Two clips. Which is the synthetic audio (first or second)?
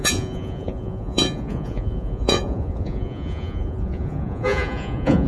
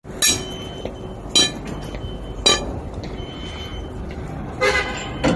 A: first